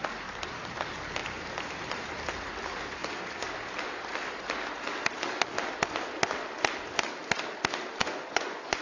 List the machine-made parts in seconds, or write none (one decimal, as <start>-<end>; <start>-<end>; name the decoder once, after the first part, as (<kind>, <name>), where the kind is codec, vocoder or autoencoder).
8.0-8.8 (vocoder, Vocos)

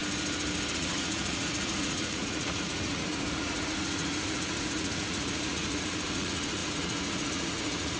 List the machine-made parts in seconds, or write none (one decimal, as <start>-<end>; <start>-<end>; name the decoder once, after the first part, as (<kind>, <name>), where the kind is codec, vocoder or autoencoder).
0.7-8.0 (vocoder, Vocos)

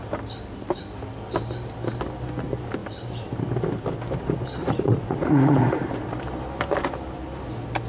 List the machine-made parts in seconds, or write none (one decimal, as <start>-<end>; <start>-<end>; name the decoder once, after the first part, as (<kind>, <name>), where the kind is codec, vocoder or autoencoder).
4.6-5.9 (vocoder, Vocos)

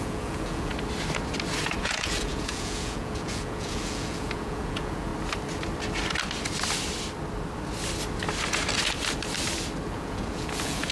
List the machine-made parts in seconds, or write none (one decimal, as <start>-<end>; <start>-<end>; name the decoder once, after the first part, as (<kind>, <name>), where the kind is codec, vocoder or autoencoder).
0.0-0.7 (vocoder, Vocos); 1.8-5.1; 9.9-10.9

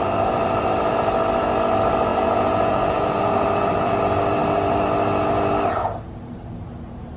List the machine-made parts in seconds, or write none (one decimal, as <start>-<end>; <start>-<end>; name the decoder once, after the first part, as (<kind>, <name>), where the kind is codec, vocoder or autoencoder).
2.1-4.0 (vocoder, Vocos)

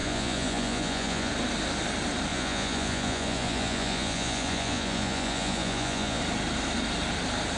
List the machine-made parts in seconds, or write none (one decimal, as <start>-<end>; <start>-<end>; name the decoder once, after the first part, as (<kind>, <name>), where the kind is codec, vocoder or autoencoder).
0.0-1.3 (vocoder, Vocos); 2.3-6.2